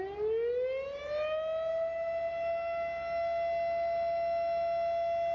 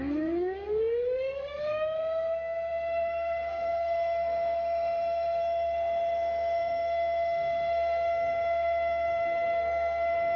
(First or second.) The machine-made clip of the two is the second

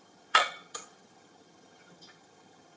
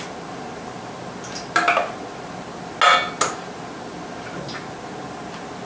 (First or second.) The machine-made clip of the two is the first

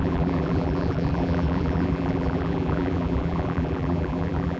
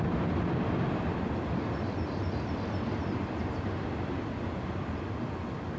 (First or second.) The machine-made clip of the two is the first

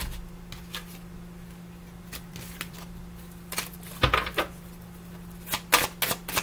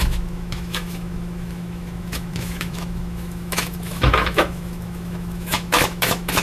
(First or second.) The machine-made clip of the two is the second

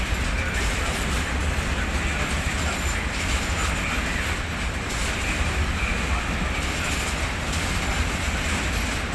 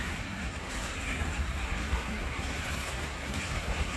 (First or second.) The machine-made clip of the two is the second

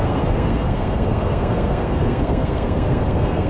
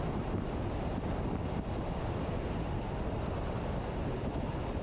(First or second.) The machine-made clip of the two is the first